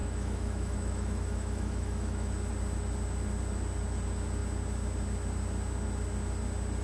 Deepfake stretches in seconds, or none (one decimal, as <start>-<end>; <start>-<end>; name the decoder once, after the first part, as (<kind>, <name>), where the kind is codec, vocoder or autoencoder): 0.0-2.3 (autoencoder, DAC-VAE)